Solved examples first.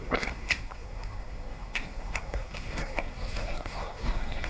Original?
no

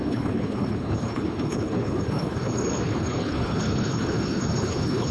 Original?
no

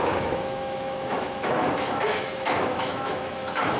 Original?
no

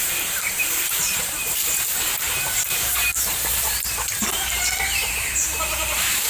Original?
no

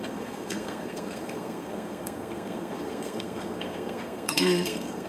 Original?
no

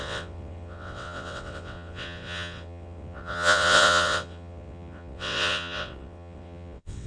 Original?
no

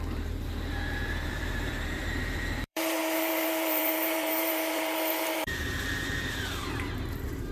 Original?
no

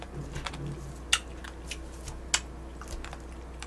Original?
yes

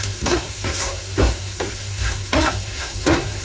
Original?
no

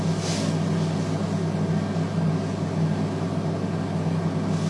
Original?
yes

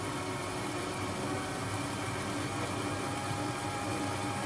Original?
yes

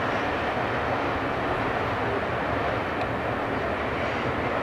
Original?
yes